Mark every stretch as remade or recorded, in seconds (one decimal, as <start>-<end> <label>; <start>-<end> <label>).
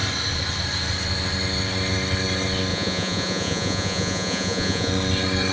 0.0-2.7 recorded; 2.7-4.9 remade; 4.9-5.5 recorded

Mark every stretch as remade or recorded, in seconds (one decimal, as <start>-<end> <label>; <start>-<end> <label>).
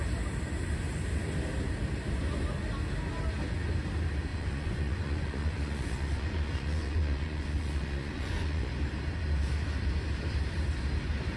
0.0-4.3 recorded; 4.3-8.7 remade; 8.7-11.4 recorded